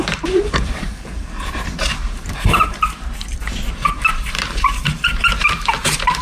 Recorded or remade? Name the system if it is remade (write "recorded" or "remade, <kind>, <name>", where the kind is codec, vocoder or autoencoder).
remade, vocoder, BigVGAN v2